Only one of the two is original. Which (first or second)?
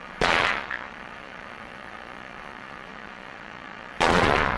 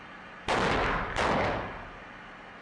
second